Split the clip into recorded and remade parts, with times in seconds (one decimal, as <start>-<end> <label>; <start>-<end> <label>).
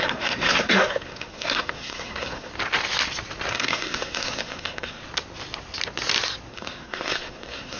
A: 0.0-2.5 remade; 2.5-3.5 recorded; 3.5-5.0 remade; 5.0-6.5 recorded; 6.5-7.8 remade